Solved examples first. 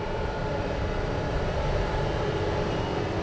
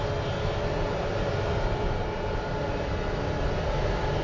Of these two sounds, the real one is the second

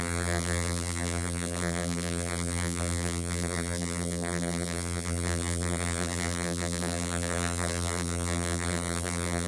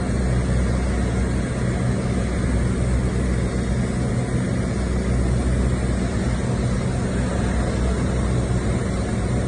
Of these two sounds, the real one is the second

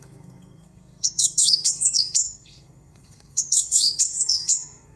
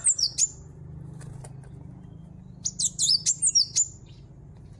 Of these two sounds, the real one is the second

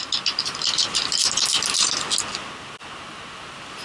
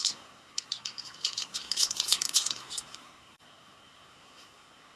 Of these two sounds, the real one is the first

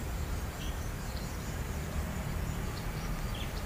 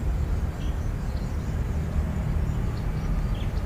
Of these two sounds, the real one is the second